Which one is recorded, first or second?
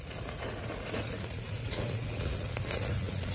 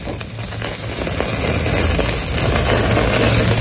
second